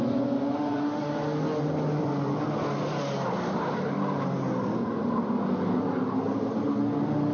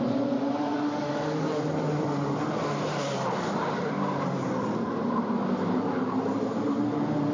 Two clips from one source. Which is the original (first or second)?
first